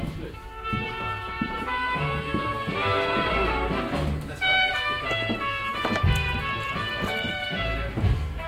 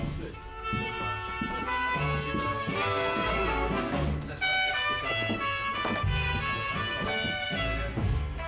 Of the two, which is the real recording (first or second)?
second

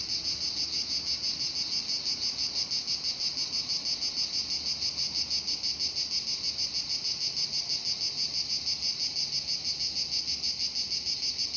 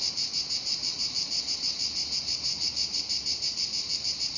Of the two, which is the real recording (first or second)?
first